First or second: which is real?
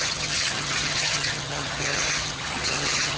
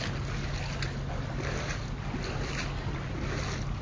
second